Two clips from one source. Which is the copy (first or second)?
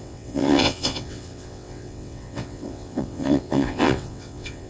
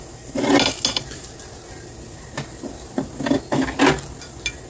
first